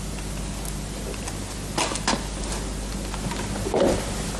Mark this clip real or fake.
real